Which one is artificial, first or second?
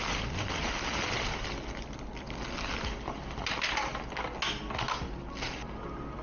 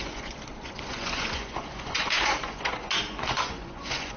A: second